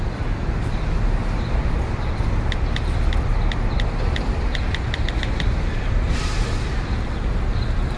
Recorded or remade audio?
recorded